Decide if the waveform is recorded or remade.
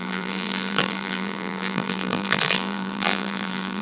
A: remade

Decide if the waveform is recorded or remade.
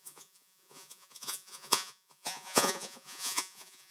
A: remade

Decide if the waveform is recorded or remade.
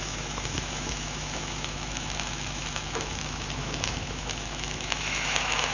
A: remade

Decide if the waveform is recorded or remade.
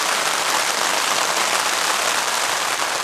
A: recorded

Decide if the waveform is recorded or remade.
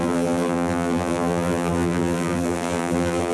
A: remade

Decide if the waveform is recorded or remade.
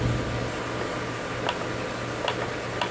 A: recorded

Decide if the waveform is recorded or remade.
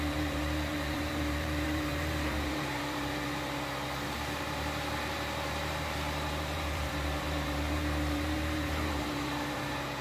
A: remade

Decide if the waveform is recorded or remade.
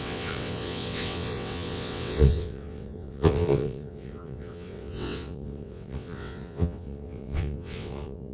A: remade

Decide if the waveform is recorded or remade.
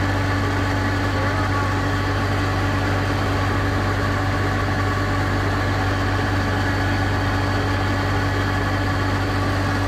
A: recorded